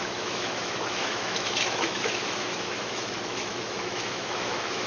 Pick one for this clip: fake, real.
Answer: fake